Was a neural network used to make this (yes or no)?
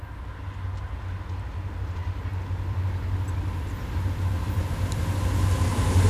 no